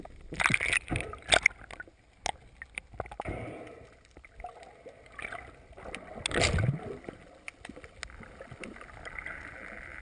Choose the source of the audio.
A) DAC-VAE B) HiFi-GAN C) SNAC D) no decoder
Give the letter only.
D